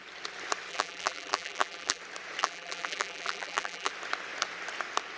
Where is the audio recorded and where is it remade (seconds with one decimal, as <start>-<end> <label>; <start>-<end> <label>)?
0.0-0.7 recorded; 0.7-2.0 remade; 2.0-2.4 recorded; 2.4-3.9 remade; 3.9-5.2 recorded